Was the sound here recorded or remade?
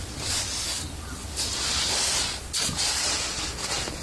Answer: recorded